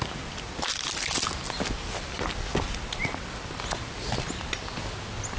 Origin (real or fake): real